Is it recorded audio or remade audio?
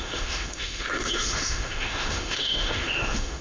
remade